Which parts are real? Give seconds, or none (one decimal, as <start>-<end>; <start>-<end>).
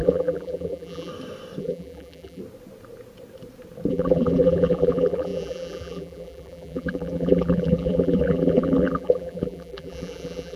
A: 1.1-1.6; 2.4-3.9